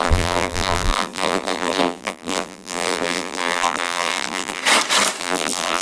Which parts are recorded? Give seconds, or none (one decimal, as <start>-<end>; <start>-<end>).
4.6-5.2